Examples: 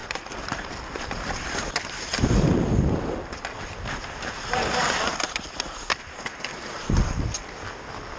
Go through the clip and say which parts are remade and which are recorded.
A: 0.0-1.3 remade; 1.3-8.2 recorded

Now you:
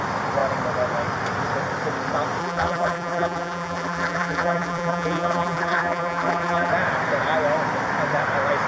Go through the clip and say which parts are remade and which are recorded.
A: 0.0-2.4 recorded; 2.4-6.7 remade; 6.7-8.7 recorded